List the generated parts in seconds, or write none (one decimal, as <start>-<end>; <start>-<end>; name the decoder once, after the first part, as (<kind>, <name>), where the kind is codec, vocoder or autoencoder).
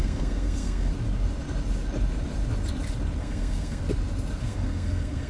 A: 0.0-0.9 (codec, SNAC); 3.2-3.8; 4.4-5.3